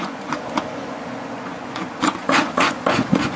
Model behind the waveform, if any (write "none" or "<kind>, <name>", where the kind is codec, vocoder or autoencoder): vocoder, Vocos